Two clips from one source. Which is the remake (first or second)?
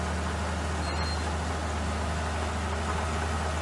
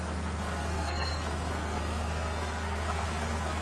second